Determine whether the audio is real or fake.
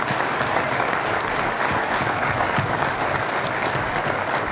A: fake